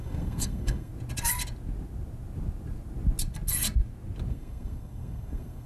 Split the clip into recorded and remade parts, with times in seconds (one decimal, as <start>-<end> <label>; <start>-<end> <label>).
0.0-0.9 remade; 0.9-4.3 recorded; 4.3-5.7 remade